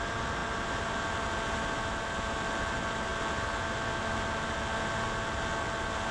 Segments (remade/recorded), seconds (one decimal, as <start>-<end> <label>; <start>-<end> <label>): 0.0-6.1 recorded